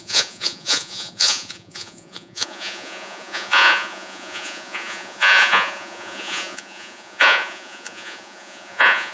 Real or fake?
fake